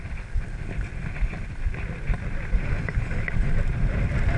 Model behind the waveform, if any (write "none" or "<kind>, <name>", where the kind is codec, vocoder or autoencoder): none